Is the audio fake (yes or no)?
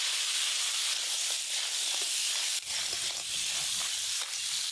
no